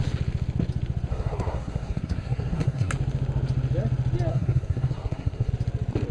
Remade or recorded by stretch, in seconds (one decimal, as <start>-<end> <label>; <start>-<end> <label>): 0.0-1.1 recorded; 1.1-2.9 remade; 2.9-4.3 recorded; 4.3-5.5 remade; 5.5-6.1 recorded

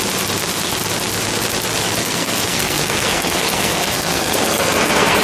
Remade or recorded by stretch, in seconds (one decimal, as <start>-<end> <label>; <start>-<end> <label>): 0.0-2.0 recorded; 2.0-5.2 remade

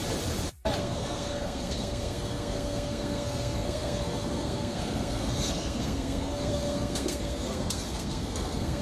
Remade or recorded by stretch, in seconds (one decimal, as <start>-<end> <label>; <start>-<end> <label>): 0.0-0.8 recorded; 0.8-8.8 remade

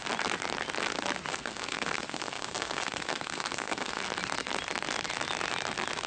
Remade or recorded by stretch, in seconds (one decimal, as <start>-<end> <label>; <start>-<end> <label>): 0.0-1.3 recorded; 1.3-4.0 remade; 4.0-6.1 recorded